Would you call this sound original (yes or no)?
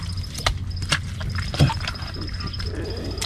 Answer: yes